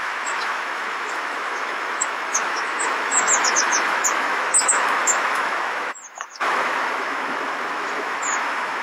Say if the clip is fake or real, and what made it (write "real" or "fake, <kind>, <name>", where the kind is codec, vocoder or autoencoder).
fake, autoencoder, DAC-VAE